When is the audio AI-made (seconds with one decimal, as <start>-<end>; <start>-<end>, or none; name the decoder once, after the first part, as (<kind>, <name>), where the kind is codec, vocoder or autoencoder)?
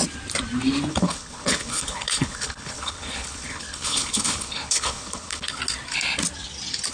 0.9-5.6 (codec, HILCodec)